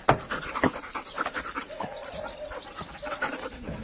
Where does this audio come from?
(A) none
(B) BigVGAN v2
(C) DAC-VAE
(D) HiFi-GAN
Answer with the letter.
A